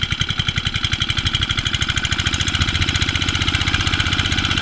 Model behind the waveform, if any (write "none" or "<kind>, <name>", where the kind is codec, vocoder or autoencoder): none